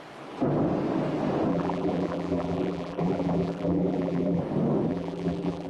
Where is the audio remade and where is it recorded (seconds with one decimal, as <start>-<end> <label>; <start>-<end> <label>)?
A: 0.0-1.5 recorded; 1.5-4.4 remade; 4.4-4.9 recorded; 4.9-5.7 remade